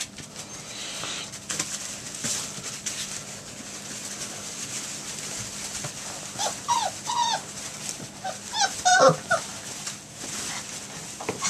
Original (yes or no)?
yes